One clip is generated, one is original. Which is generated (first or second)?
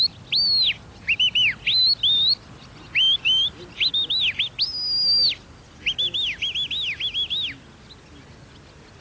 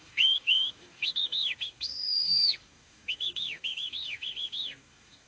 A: second